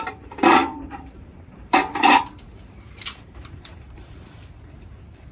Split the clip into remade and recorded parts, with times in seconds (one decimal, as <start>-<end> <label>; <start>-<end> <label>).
0.0-5.3 remade